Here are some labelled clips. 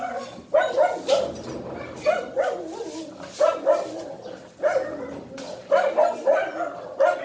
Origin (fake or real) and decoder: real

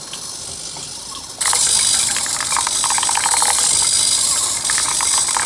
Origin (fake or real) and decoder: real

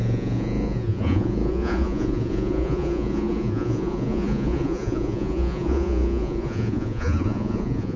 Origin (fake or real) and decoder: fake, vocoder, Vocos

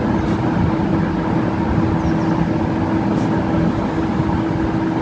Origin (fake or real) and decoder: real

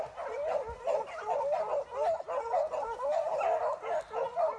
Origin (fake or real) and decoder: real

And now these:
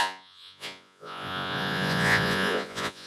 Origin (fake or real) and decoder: fake, vocoder, Vocos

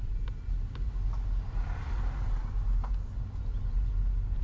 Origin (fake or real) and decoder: real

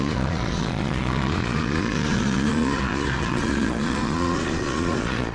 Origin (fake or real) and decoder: fake, vocoder, Vocos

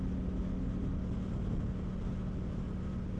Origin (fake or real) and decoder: real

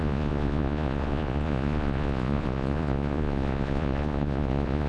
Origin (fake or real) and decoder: fake, vocoder, Vocos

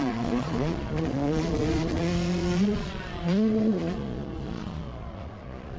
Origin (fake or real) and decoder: fake, vocoder, Vocos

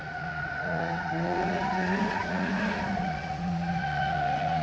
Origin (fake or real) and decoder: fake, vocoder, Vocos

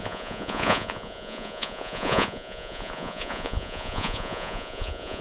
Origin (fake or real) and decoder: fake, vocoder, Vocos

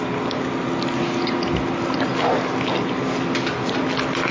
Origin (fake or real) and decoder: real